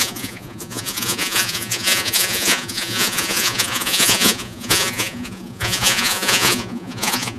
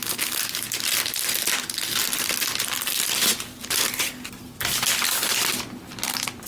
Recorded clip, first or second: second